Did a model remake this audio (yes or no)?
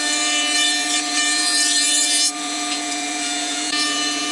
yes